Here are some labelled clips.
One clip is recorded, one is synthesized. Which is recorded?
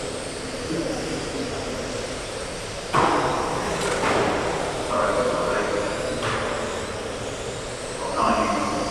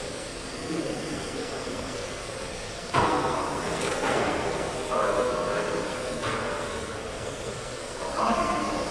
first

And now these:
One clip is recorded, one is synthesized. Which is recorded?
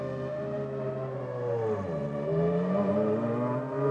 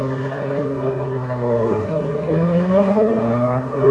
first